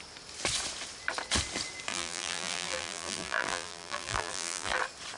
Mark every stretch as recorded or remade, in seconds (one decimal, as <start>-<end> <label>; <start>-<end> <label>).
0.0-1.9 recorded; 1.9-4.8 remade; 4.8-5.2 recorded